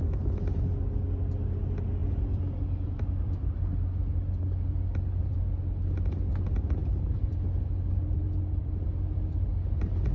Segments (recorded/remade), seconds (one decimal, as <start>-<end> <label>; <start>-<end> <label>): 0.0-2.0 recorded; 2.0-5.5 remade; 5.5-6.8 recorded; 6.8-9.5 remade; 9.5-10.1 recorded